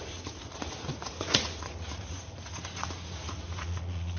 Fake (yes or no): yes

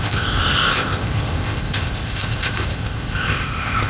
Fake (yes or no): yes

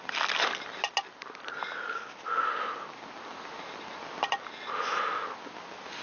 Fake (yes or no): no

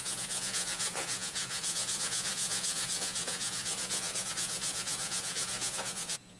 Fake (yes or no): yes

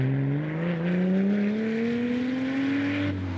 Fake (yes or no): no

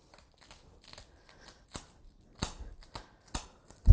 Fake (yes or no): no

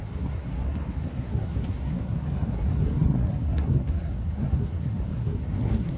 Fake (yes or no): yes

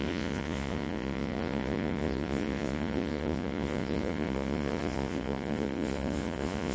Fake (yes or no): yes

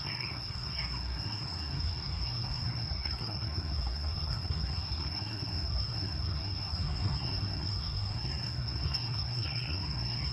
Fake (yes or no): yes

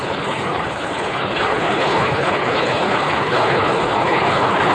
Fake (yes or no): yes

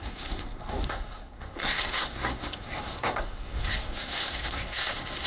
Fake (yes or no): yes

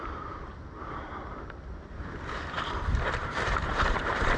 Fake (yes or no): yes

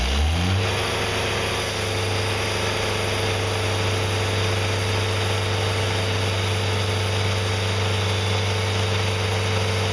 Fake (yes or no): no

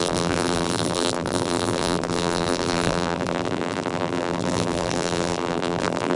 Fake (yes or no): yes